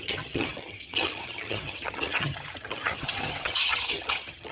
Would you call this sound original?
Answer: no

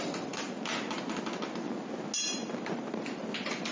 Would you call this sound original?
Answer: yes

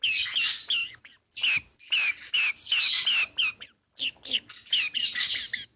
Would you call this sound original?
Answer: yes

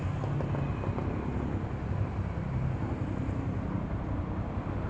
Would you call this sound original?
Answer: yes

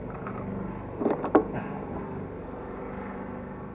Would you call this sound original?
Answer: yes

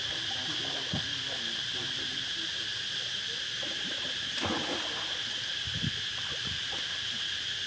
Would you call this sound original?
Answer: yes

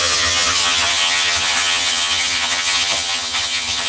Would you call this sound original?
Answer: no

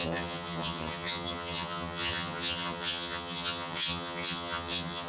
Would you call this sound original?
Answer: no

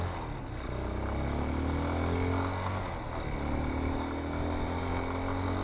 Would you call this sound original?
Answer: yes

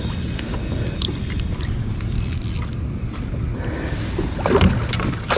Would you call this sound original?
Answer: yes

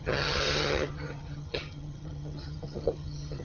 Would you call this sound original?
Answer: no